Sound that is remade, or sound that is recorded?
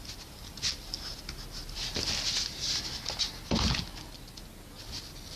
recorded